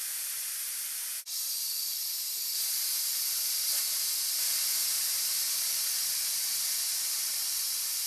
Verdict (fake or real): fake